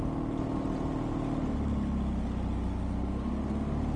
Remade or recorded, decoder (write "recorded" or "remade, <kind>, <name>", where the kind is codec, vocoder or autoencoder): recorded